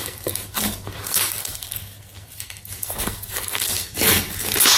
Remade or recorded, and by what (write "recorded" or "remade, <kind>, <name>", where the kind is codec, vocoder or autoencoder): remade, codec, SNAC